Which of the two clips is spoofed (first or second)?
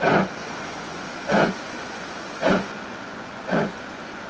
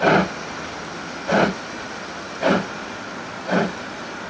first